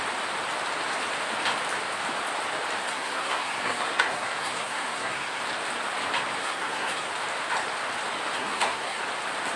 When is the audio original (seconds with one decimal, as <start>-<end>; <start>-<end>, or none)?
0.0-2.8; 5.4-6.4; 7.1-8.4; 9.0-9.6